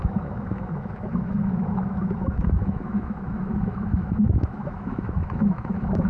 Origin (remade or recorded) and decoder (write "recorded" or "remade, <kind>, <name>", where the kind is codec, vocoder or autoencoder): remade, autoencoder, DAC-VAE